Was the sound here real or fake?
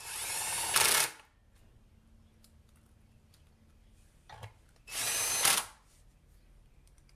real